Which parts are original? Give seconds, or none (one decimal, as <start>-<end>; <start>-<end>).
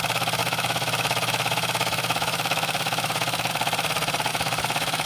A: 0.0-0.4; 3.5-4.3